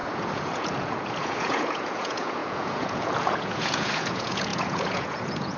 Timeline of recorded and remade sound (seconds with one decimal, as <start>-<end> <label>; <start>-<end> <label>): 0.0-5.6 remade